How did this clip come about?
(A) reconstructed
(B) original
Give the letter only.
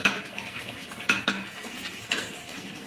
A